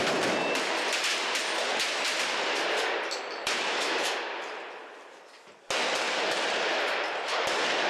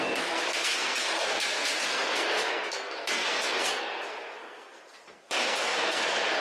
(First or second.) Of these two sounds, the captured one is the first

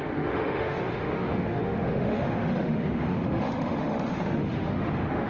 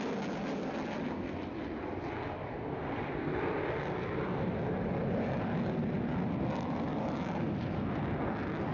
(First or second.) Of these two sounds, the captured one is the second